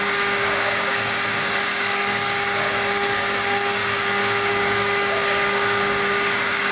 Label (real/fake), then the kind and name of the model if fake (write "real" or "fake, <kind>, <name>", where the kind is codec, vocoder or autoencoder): fake, codec, DAC